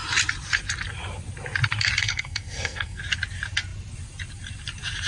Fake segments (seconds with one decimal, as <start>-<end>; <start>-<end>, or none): 2.0-3.0